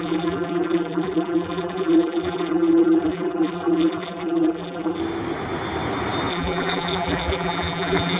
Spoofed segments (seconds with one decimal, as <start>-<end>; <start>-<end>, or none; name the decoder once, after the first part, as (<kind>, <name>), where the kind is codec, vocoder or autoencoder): 0.0-5.0 (vocoder, BigVGAN v2); 6.3-8.2